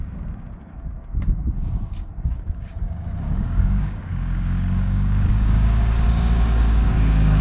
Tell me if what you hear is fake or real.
fake